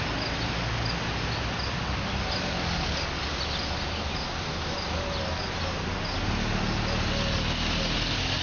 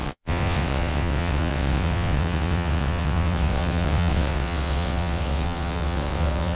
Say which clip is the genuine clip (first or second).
first